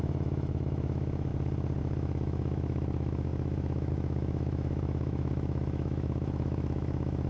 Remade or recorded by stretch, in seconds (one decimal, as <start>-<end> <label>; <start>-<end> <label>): 0.0-1.3 remade; 1.3-1.8 recorded; 1.8-7.3 remade